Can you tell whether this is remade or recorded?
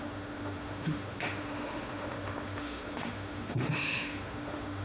remade